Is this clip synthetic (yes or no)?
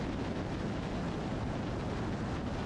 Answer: no